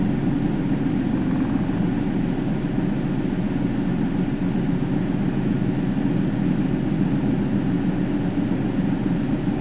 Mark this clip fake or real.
real